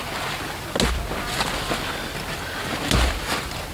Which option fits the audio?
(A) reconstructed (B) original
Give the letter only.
B